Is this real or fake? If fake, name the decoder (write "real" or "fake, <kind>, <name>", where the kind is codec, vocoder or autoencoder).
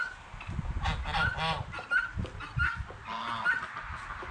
real